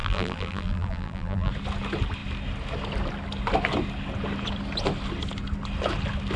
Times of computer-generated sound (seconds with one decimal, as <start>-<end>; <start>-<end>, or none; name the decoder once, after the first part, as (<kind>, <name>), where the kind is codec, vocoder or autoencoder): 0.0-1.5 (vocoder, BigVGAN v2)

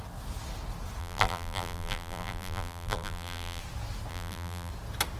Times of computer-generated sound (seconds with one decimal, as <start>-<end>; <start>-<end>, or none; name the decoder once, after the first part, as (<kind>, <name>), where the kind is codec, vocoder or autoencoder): 1.0-3.6 (vocoder, BigVGAN v2); 4.1-4.7

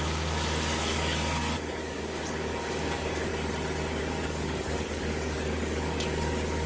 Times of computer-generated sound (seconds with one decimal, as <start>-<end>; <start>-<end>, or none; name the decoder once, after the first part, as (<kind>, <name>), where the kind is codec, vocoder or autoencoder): 0.0-3.3 (codec, DAC); 4.0-6.7